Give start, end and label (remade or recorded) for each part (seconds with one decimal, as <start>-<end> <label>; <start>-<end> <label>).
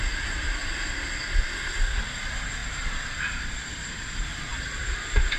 0.0-0.6 remade; 0.6-2.0 recorded; 2.0-5.4 remade